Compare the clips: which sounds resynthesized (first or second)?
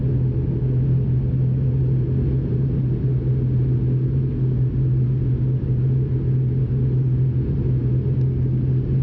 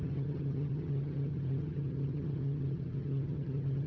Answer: second